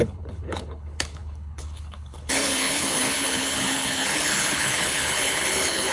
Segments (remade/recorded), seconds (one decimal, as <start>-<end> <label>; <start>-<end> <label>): 0.0-5.9 remade